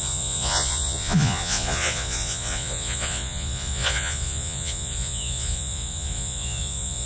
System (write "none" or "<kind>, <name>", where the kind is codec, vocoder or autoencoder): vocoder, Vocos